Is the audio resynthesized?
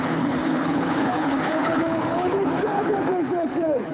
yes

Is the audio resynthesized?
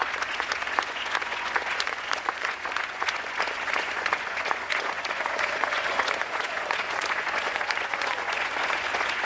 yes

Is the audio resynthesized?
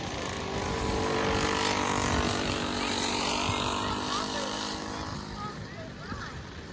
no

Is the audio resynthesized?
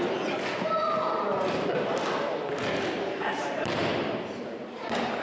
no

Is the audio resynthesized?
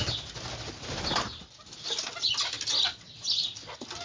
no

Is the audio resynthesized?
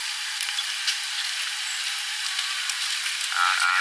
no